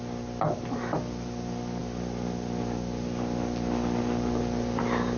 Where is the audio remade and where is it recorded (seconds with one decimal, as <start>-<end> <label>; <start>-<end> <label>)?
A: 0.0-5.2 recorded